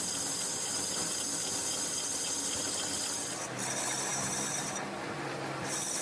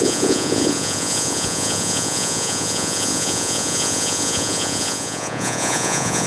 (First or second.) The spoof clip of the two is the second